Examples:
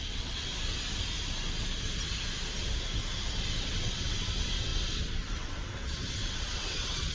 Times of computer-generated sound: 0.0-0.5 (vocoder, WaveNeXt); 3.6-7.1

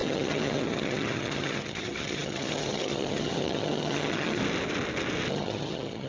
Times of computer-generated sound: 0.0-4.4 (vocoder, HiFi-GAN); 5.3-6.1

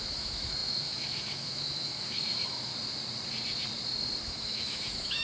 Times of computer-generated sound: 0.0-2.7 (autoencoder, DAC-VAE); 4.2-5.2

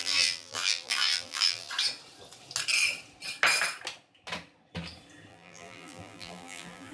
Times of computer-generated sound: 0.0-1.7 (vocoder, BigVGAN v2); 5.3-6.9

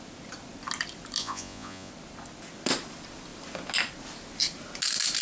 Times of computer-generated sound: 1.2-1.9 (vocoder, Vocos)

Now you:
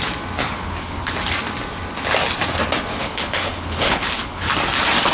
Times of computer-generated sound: 0.4-1.1 (codec, HILCodec); 3.0-4.5

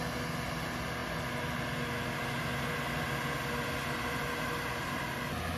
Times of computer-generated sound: none

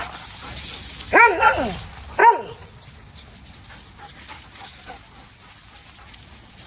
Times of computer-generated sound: 0.9-1.4 (autoencoder, DAC-VAE)